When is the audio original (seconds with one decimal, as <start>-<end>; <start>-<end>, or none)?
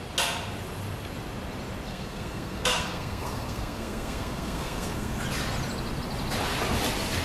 0.0-1.9; 5.2-7.2